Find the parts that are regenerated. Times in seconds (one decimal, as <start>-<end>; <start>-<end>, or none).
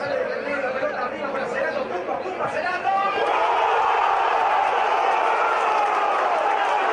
1.5-5.6